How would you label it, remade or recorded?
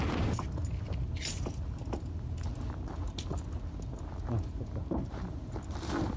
recorded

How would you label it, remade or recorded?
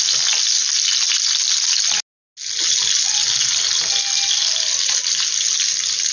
recorded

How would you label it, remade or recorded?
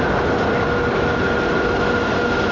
recorded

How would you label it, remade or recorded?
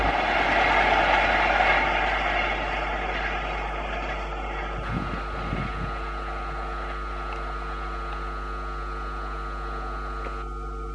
recorded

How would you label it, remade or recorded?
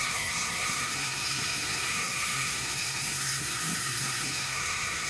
remade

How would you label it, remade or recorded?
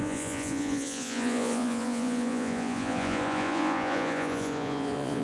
remade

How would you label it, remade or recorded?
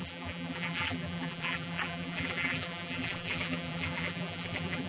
remade